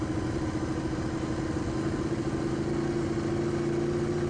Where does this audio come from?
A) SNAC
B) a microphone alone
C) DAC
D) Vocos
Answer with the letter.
B